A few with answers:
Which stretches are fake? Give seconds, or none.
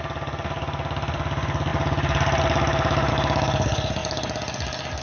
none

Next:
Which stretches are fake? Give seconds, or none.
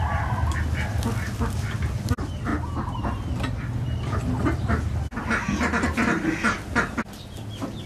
none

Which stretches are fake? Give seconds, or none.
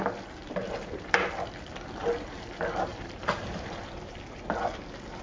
0.4-1.3 (vocoder, BigVGAN v2); 2.9-4.6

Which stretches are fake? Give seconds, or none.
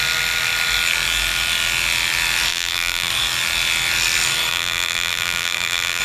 2.5-3.1 (vocoder, BigVGAN v2); 4.5-6.0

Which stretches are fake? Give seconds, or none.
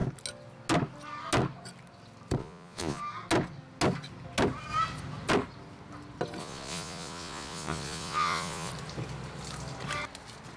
2.4-3.0 (vocoder, Vocos); 6.4-8.7